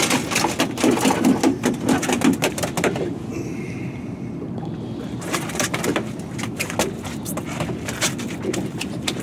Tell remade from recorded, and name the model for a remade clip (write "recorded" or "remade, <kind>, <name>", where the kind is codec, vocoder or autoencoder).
recorded